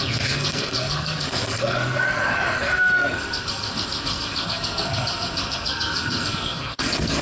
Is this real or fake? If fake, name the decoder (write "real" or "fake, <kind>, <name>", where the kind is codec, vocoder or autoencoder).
fake, codec, SNAC